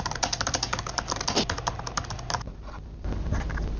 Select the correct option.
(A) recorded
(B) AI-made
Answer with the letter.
A